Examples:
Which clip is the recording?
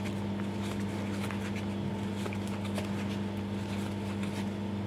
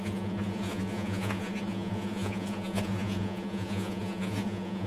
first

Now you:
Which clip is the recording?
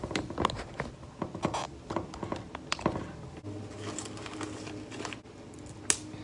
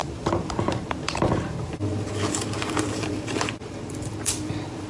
first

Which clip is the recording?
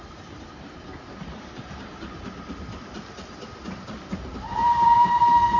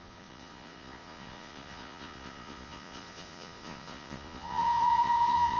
first